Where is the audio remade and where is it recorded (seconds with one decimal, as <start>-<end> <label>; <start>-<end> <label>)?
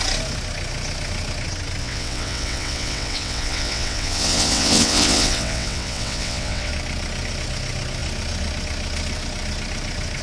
0.0-1.8 recorded; 1.8-6.7 remade; 6.7-10.2 recorded